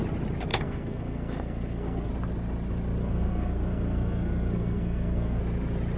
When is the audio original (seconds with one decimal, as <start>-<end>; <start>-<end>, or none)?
0.0-0.5; 2.1-3.0; 5.4-6.0